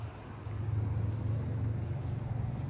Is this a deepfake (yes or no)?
no